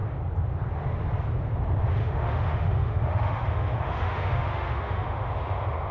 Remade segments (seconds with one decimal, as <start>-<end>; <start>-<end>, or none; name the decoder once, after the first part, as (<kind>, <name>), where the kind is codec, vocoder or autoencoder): 2.0-5.3 (autoencoder, DAC-VAE)